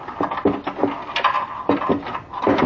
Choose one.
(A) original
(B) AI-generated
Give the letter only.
A